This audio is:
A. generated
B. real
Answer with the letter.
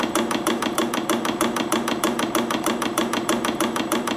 A